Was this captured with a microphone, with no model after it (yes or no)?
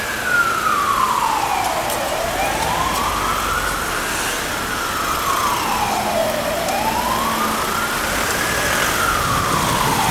yes